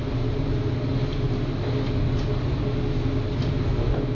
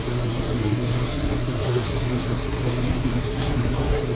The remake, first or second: second